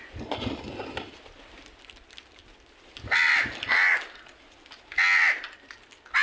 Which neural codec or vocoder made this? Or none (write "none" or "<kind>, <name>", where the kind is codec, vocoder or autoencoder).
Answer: none